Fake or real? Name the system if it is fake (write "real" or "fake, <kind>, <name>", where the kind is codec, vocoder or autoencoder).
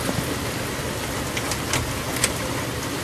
real